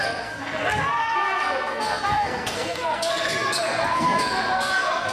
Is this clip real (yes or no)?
no